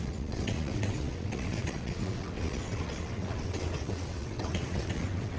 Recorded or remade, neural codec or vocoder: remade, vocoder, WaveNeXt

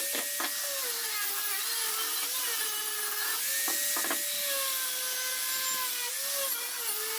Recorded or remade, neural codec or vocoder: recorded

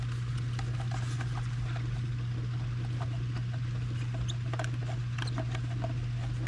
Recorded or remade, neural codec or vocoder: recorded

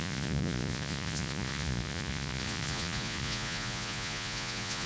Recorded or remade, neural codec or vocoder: remade, vocoder, Vocos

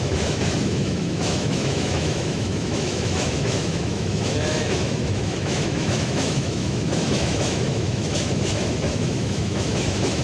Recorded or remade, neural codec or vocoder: remade, autoencoder, DAC-VAE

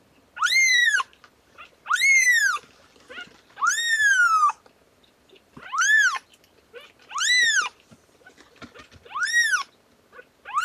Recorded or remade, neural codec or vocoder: remade, vocoder, BigVGAN v2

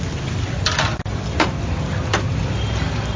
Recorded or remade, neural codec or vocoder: recorded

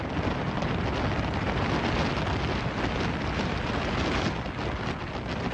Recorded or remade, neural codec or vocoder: recorded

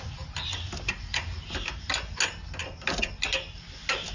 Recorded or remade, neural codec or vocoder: recorded